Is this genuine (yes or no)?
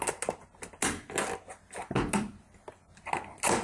yes